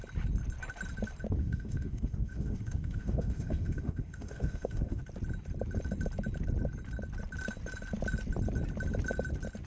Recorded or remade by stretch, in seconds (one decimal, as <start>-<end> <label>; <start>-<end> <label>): 0.0-1.4 recorded; 1.4-5.0 remade; 5.0-9.7 recorded